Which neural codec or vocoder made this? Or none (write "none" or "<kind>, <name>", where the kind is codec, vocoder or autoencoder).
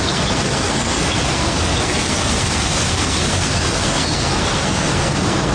codec, SNAC